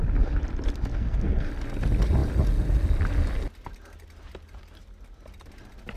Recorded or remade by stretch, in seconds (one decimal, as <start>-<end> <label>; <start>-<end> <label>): 0.0-0.9 recorded; 0.9-1.5 remade; 1.5-6.0 recorded